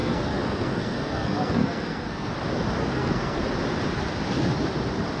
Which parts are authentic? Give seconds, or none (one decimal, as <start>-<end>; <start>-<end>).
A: 2.3-2.8; 3.4-5.2